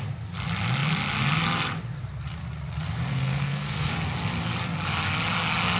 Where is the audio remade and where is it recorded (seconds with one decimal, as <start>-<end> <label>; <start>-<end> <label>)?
0.0-3.1 recorded; 3.1-3.9 remade; 3.9-5.8 recorded